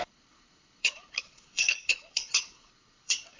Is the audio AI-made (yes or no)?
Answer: yes